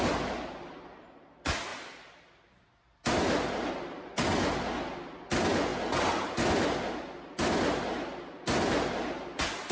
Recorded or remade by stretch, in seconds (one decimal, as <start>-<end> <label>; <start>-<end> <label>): 0.0-9.7 recorded